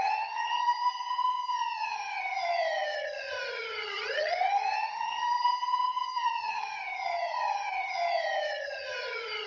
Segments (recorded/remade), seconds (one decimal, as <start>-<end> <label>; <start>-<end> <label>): 0.0-9.5 remade